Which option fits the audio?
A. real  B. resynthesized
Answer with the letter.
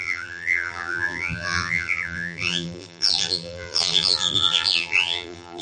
B